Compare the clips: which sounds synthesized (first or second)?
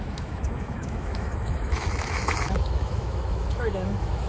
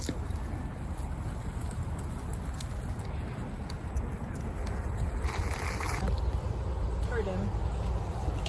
first